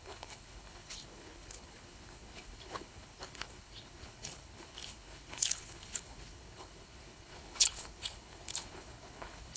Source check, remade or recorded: remade